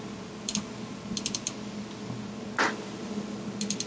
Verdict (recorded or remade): recorded